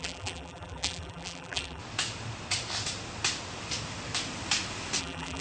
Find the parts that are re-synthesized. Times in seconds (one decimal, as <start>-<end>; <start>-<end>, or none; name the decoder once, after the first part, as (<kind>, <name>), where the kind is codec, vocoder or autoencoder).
0.0-1.8 (vocoder, BigVGAN v2); 5.0-5.4